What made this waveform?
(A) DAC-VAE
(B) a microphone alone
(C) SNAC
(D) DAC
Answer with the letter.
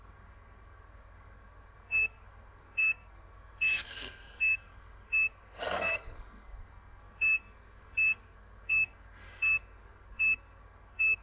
C